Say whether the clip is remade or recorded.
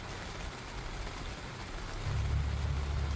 recorded